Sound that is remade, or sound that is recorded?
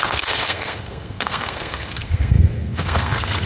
remade